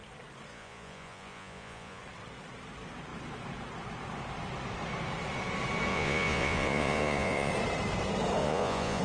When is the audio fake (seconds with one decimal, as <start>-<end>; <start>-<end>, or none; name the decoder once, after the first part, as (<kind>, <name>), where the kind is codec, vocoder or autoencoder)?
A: 0.5-2.0 (vocoder, Vocos); 5.9-7.5; 8.4-9.0